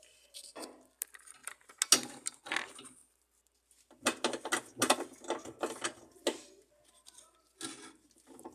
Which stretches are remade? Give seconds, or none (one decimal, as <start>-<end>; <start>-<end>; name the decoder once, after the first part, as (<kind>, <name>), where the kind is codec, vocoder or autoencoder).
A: none